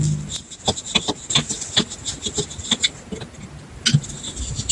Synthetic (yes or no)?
no